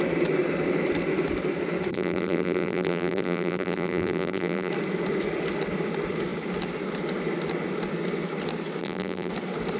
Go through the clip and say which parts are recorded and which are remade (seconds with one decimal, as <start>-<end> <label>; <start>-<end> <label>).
0.0-1.9 recorded; 1.9-4.7 remade; 4.7-8.8 recorded; 8.8-9.3 remade; 9.3-9.8 recorded